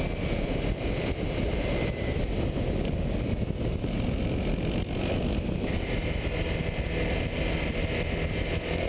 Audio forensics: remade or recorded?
recorded